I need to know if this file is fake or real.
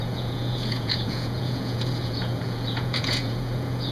fake